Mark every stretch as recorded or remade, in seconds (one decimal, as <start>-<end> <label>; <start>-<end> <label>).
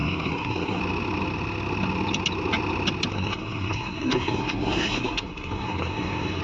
0.0-0.8 remade; 0.8-3.1 recorded; 3.1-6.4 remade